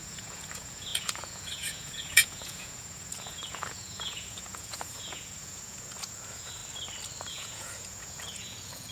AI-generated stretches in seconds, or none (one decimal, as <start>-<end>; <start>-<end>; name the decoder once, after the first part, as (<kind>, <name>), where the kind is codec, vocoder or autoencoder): 0.0-6.6 (vocoder, Vocos); 7.3-8.9